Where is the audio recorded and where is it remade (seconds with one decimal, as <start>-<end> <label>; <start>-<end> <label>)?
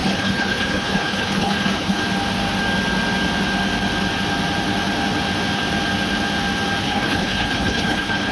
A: 0.0-2.0 remade; 2.0-6.8 recorded; 6.8-8.3 remade